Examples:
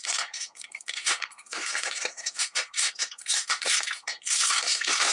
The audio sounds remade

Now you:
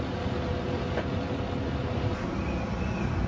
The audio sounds recorded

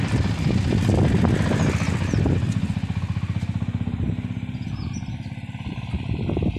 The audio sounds recorded